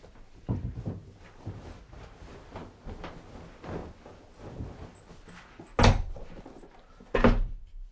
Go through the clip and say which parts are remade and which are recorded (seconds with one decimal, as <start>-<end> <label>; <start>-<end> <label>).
0.0-7.9 recorded